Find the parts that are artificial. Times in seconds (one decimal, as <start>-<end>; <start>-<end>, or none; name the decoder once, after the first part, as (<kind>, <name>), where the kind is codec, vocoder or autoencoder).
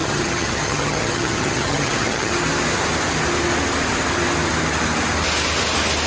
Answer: 0.0-2.3 (vocoder, HiFi-GAN)